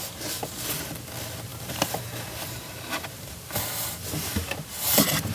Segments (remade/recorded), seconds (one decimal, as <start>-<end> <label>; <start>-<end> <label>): 0.0-1.5 recorded; 1.5-3.6 remade; 3.6-5.3 recorded